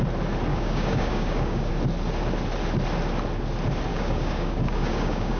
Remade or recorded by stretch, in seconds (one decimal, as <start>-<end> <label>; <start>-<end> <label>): 0.0-0.5 recorded; 0.5-1.7 remade; 1.7-3.9 recorded; 3.9-5.4 remade